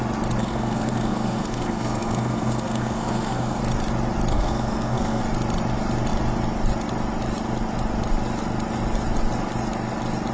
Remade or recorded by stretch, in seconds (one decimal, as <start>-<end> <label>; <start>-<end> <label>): 0.0-0.4 recorded; 0.4-3.6 remade; 3.6-4.3 recorded; 4.3-5.2 remade; 5.2-10.3 recorded